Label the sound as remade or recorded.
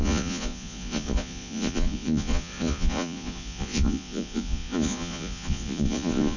remade